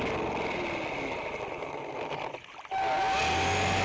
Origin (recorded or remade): recorded